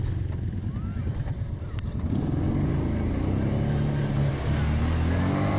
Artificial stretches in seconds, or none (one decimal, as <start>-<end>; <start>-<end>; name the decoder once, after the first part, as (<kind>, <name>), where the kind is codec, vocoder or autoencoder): none